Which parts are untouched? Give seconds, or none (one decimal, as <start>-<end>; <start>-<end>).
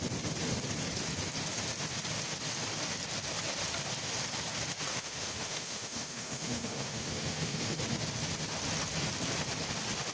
0.0-4.9; 7.8-10.1